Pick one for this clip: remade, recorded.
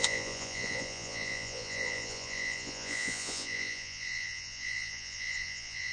remade